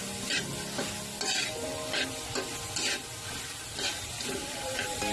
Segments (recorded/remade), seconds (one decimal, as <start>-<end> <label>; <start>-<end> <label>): 0.0-5.1 recorded